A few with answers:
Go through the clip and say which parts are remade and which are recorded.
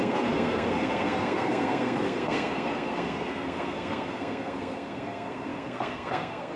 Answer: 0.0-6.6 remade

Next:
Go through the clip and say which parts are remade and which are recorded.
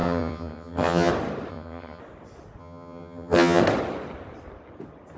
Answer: 0.0-1.1 remade; 1.1-1.5 recorded; 1.5-2.0 remade; 2.0-2.6 recorded; 2.6-3.6 remade; 3.6-5.2 recorded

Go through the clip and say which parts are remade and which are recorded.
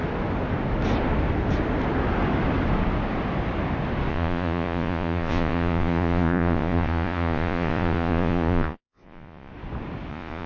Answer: 0.0-4.1 recorded; 4.1-9.5 remade; 9.5-10.1 recorded; 10.1-10.5 remade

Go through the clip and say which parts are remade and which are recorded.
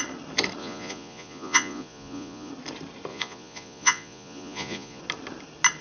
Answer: 0.0-0.6 recorded; 0.6-2.5 remade; 2.5-3.1 recorded; 3.1-5.0 remade; 5.0-5.8 recorded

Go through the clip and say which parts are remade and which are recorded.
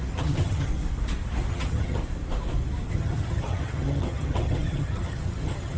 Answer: 0.0-0.7 remade; 0.7-1.5 recorded; 1.5-2.0 remade; 2.0-2.9 recorded; 2.9-5.8 remade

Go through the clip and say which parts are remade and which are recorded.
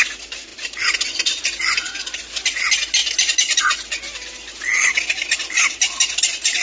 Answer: 0.0-6.6 recorded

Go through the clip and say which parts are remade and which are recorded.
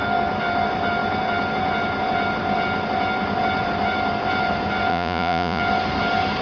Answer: 0.0-4.9 recorded; 4.9-5.6 remade; 5.6-6.4 recorded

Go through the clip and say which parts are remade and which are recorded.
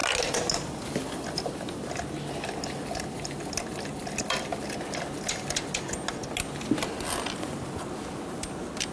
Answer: 0.0-8.9 recorded